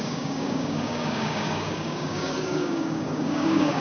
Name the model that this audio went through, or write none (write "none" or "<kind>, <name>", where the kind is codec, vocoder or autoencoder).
codec, DAC